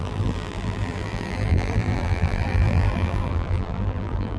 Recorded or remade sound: remade